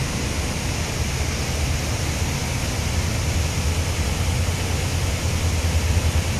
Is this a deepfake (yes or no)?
no